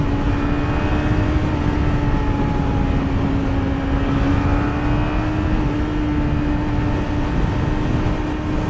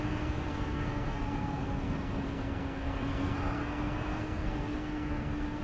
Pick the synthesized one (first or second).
second